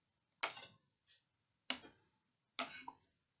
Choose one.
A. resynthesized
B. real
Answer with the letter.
B